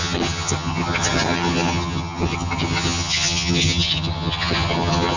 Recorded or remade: remade